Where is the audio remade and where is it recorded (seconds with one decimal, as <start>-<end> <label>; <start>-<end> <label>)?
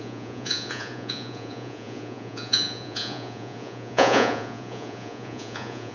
0.0-5.9 remade